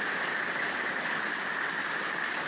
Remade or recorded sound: recorded